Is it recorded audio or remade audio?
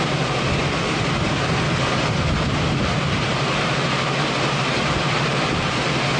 remade